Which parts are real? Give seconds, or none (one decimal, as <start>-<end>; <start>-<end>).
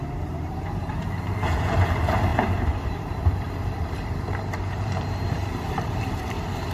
none